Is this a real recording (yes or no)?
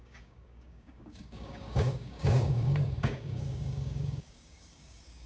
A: no